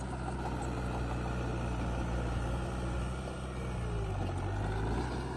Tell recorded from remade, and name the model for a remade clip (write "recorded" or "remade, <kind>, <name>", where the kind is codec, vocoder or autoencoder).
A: recorded